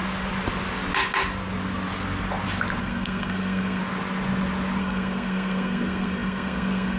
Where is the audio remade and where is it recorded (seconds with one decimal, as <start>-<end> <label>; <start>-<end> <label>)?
0.0-2.8 recorded; 2.8-3.8 remade; 3.8-4.8 recorded; 4.8-7.0 remade